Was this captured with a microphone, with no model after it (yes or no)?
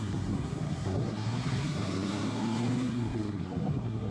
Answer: no